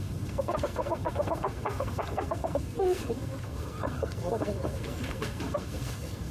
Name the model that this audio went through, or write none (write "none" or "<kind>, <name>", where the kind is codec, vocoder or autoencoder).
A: codec, SNAC